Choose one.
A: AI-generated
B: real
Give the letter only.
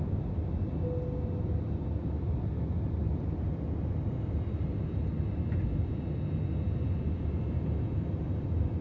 B